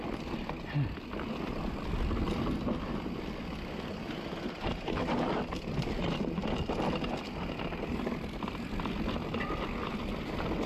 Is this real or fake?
real